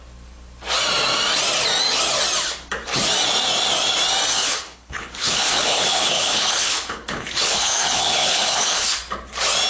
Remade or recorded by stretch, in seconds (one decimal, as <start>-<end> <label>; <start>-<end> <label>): 0.0-4.3 recorded; 4.3-9.0 remade; 9.0-9.7 recorded